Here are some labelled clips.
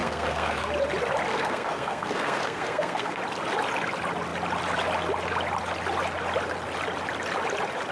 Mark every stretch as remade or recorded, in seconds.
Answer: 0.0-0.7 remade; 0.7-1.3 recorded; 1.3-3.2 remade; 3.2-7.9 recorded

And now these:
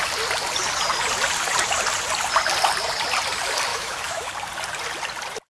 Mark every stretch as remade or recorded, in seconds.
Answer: 0.0-3.7 recorded; 3.7-4.3 remade; 4.3-5.6 recorded

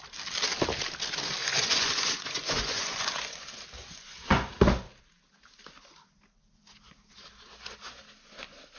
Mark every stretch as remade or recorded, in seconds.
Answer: 0.0-1.4 recorded; 1.4-3.4 remade; 3.4-3.8 recorded; 3.8-4.5 remade; 4.5-8.8 recorded